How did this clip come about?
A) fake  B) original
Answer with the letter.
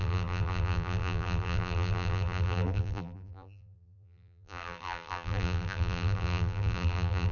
A